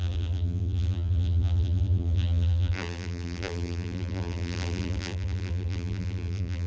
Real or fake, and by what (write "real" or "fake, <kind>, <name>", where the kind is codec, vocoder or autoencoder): fake, vocoder, BigVGAN v2